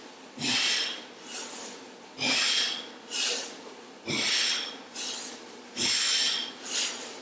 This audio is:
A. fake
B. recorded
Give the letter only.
B